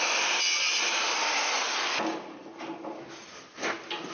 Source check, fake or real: real